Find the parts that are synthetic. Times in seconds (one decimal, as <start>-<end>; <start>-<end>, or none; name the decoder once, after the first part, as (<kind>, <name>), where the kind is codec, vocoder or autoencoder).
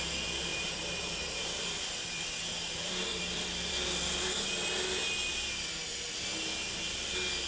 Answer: 0.5-4.5 (vocoder, BigVGAN v2)